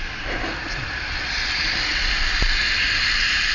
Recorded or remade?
recorded